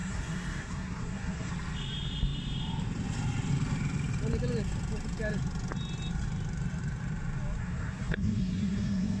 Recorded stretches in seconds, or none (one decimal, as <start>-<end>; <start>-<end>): 1.5-7.6